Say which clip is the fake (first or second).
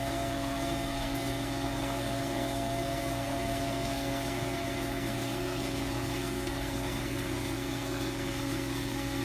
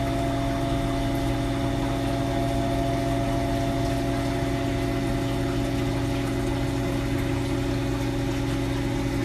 first